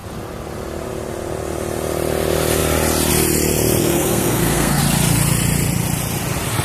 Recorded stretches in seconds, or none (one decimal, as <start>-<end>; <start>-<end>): 0.0-3.8; 4.8-6.6